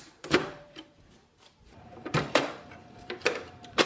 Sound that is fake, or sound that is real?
fake